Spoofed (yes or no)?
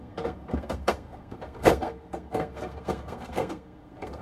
yes